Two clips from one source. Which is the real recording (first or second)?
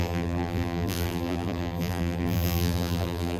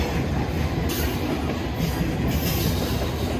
second